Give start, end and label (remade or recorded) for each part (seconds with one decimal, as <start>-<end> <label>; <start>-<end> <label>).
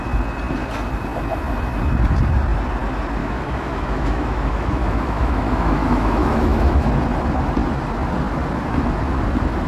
0.0-3.2 recorded; 3.2-6.9 remade; 6.9-9.7 recorded